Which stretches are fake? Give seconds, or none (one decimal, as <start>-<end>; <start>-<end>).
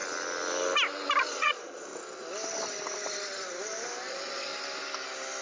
1.2-1.9; 4.1-4.5